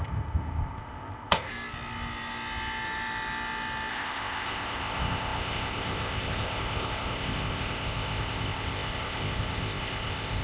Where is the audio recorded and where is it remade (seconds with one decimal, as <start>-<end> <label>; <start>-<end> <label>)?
0.0-1.5 remade; 1.5-3.9 recorded; 3.9-10.4 remade